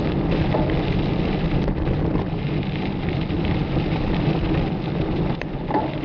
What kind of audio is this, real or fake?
real